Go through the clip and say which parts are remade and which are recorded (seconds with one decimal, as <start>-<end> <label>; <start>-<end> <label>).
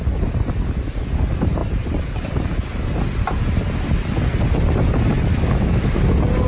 0.0-5.3 recorded; 5.3-6.0 remade; 6.0-6.5 recorded